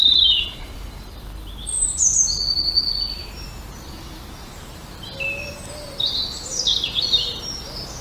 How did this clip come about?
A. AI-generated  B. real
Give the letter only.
B